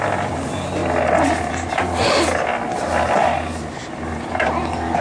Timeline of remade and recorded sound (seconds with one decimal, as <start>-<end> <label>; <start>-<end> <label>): 0.0-0.8 remade; 0.8-3.8 recorded; 3.8-5.0 remade